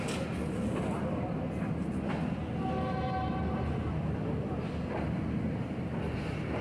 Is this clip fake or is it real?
real